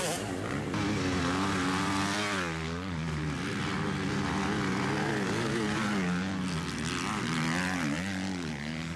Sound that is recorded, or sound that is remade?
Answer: recorded